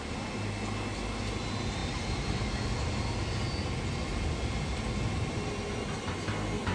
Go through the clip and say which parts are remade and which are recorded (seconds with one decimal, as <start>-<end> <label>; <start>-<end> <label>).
0.0-1.8 recorded; 1.8-2.4 remade; 2.4-6.7 recorded